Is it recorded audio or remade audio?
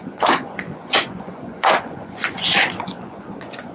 remade